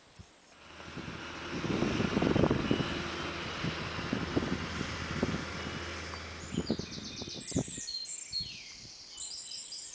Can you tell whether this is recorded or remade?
recorded